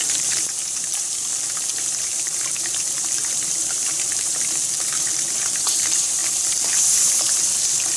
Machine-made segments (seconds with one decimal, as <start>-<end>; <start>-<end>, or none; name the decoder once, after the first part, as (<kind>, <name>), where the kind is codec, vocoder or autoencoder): 0.0-1.3 (vocoder, BigVGAN v2); 2.0-8.0